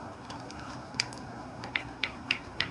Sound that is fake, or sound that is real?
fake